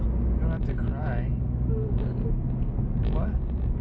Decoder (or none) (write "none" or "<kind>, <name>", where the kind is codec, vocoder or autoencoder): none